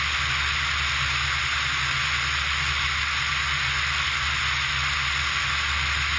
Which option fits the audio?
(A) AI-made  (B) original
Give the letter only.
B